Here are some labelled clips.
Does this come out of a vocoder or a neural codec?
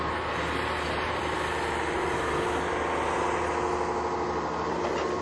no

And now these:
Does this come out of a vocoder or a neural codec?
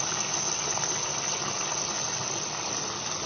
no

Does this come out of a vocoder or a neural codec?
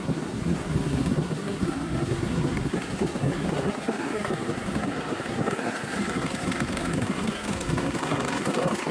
yes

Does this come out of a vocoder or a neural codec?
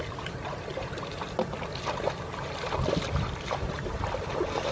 no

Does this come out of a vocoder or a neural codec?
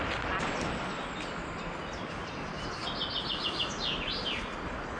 no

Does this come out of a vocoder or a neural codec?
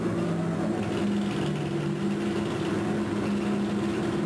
no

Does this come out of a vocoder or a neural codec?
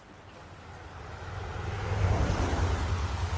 no